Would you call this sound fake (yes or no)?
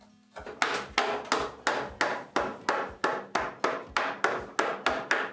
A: no